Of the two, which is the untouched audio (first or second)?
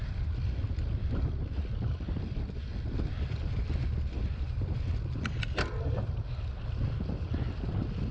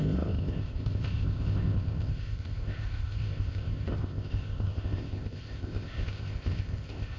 first